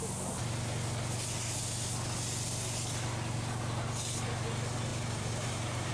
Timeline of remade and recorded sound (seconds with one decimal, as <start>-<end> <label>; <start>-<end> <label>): 0.0-4.9 recorded; 4.9-5.9 remade